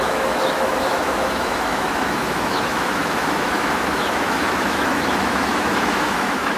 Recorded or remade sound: remade